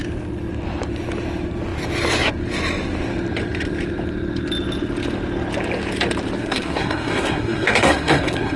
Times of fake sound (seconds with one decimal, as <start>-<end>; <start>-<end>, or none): 6.4-8.6